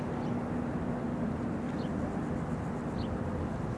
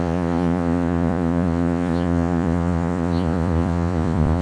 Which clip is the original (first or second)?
first